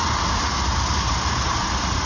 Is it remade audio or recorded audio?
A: recorded